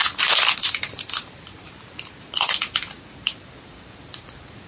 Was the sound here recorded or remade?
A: remade